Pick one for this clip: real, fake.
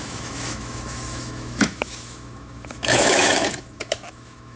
fake